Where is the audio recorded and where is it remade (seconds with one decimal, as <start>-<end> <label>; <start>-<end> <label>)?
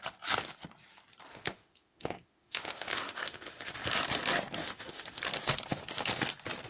0.0-1.3 recorded; 1.3-3.7 remade; 3.7-4.6 recorded; 4.6-5.2 remade; 5.2-6.7 recorded